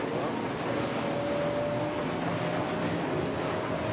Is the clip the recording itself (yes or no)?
yes